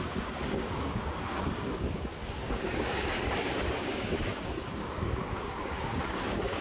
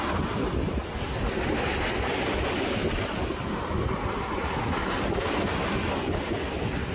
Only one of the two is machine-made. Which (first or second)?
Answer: first